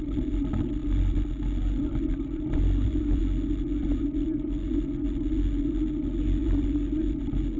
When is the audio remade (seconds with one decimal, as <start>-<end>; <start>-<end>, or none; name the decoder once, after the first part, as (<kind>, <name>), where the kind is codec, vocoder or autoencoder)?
0.0-0.8 (vocoder, BigVGAN v2); 1.6-3.2; 3.8-4.3; 6.4-7.6